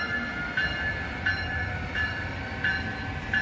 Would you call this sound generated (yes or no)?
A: no